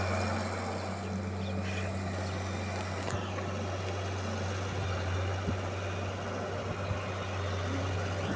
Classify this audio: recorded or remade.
recorded